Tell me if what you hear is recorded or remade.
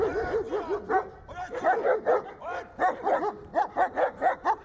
remade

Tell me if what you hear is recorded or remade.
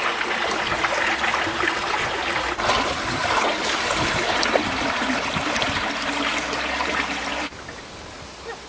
recorded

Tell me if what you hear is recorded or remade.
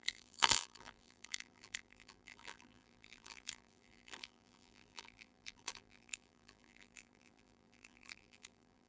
remade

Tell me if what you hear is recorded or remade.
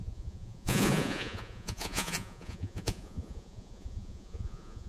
remade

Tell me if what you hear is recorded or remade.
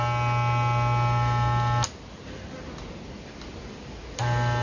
recorded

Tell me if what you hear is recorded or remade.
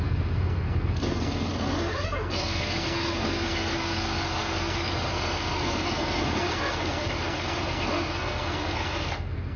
remade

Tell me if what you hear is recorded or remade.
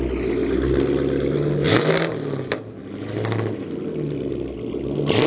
recorded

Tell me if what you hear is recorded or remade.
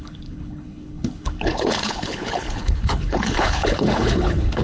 remade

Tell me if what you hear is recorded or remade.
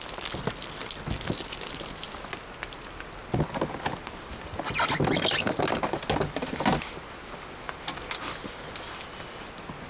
recorded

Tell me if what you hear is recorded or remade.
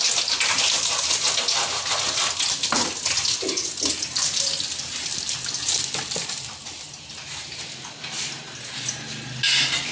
recorded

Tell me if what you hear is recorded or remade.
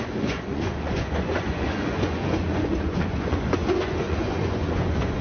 remade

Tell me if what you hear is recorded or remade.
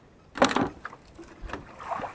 recorded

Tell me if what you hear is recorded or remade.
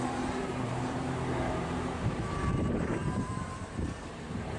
remade